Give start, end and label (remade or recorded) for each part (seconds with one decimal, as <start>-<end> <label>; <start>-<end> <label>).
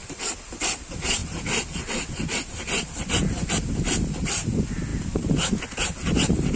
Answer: 0.0-6.6 recorded